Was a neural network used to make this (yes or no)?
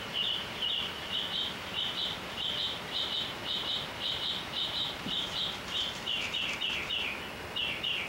yes